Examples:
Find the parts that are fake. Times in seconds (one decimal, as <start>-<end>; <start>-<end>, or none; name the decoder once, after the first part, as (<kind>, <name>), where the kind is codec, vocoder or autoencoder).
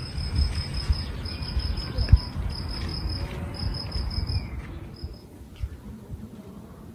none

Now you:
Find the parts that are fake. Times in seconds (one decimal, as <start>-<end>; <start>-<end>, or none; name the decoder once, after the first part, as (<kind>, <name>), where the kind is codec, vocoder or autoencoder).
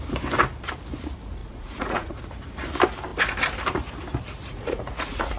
1.4-2.2 (vocoder, Vocos); 4.4-5.4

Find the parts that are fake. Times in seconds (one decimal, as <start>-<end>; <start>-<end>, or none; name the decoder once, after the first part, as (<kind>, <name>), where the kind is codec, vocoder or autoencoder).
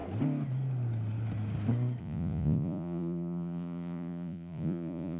2.0-5.2 (vocoder, Vocos)